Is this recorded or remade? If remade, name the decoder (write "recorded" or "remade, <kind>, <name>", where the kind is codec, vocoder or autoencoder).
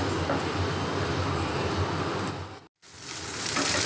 recorded